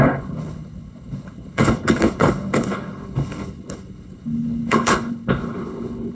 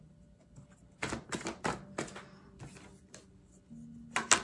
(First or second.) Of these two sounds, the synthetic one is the first